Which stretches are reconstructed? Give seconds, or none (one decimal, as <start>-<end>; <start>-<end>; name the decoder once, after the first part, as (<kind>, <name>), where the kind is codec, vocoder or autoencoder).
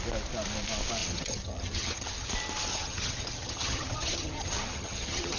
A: 1.0-2.3 (vocoder, HiFi-GAN); 2.7-5.4